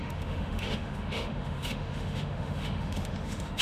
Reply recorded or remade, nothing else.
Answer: remade